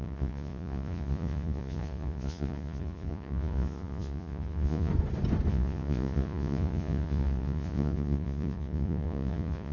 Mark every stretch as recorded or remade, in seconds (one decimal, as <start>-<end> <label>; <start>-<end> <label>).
0.0-4.9 remade; 4.9-5.5 recorded; 5.5-9.7 remade